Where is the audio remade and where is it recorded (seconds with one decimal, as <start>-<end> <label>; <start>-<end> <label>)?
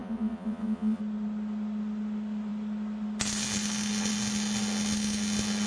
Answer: 0.0-1.0 remade; 1.0-5.7 recorded